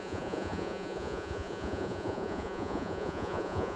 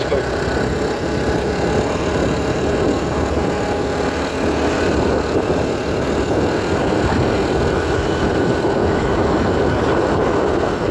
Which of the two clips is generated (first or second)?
first